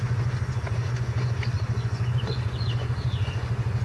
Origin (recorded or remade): remade